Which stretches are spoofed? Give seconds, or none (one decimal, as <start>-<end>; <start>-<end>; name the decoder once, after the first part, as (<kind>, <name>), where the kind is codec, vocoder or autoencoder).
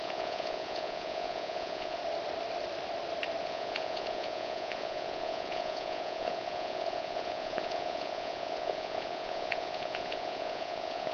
0.0-2.0 (vocoder, Vocos); 3.4-11.1